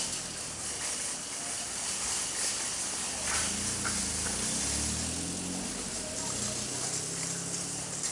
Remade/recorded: recorded